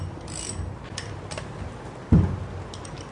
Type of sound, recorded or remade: recorded